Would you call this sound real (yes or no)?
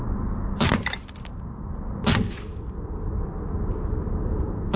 yes